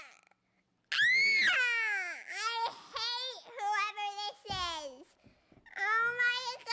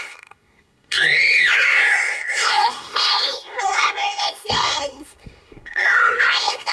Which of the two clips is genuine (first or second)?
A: first